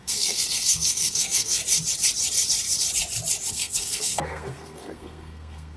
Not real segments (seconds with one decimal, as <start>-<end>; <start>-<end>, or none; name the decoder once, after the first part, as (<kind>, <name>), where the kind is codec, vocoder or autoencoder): 0.0-1.6 (codec, SNAC); 3.5-5.8